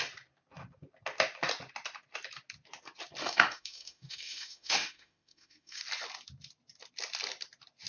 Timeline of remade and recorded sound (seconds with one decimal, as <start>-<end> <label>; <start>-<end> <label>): 0.0-3.2 recorded; 3.2-5.8 remade; 5.8-7.9 recorded